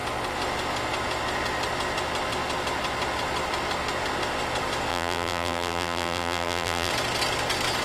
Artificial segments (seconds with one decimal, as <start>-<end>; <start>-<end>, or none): 4.9-6.9